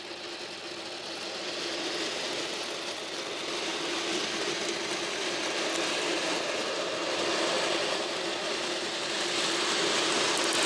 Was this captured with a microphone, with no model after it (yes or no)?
yes